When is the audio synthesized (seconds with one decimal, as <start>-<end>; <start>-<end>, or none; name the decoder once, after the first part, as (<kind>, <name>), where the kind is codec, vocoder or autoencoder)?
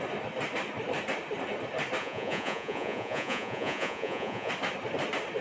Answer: 2.0-4.5 (vocoder, Vocos)